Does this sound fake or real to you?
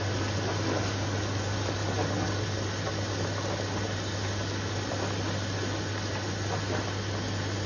real